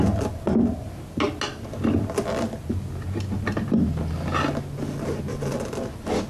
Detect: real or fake real